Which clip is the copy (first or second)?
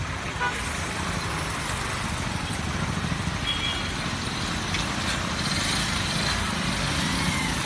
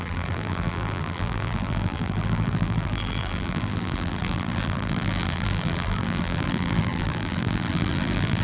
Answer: second